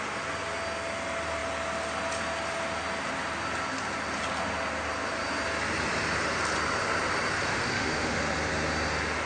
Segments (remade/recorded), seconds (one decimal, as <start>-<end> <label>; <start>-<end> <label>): 0.0-7.5 recorded; 7.5-8.2 remade; 8.2-9.3 recorded